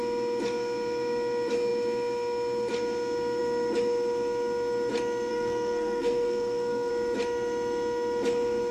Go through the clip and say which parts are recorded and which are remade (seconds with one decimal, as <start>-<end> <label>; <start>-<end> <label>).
0.0-5.3 recorded; 5.3-6.9 remade; 6.9-8.7 recorded